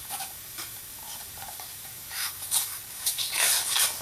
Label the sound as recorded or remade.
remade